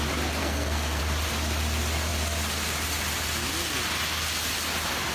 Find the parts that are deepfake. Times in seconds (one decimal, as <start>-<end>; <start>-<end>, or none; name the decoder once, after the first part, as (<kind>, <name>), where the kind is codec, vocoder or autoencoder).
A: 0.4-1.0 (codec, SNAC)